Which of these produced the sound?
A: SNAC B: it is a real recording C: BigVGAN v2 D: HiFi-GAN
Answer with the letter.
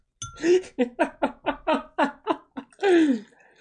B